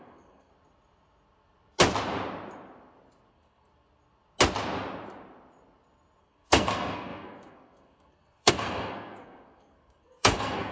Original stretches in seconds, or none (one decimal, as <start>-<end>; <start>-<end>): 0.5-3.3; 3.7-6.2